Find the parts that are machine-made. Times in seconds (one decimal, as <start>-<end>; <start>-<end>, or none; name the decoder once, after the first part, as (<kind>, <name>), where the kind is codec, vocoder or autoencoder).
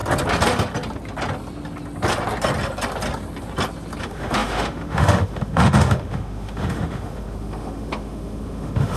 4.0-9.0 (autoencoder, DAC-VAE)